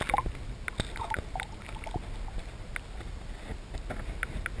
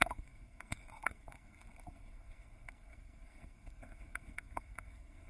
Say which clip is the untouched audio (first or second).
first